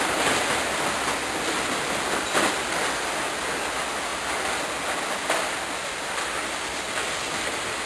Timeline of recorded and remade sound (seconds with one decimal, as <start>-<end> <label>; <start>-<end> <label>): 0.0-7.9 recorded